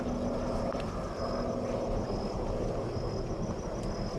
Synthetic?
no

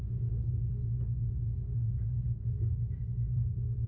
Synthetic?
no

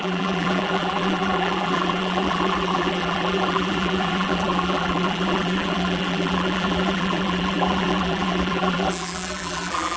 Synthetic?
yes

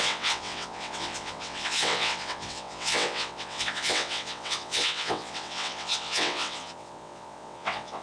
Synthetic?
yes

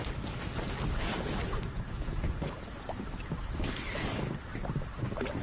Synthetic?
no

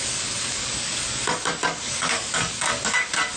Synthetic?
yes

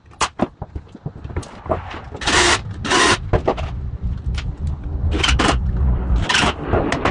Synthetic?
no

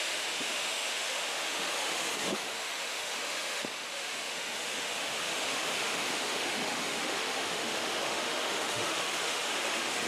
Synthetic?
yes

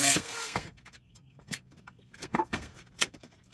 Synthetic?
yes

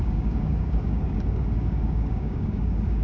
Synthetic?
yes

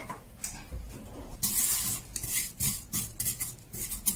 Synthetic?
no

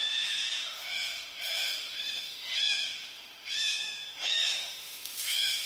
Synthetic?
yes